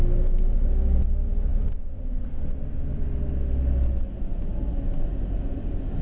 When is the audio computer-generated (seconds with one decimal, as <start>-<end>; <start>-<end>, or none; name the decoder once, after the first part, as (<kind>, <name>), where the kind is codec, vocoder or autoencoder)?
none